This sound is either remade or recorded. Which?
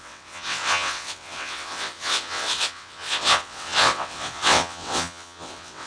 remade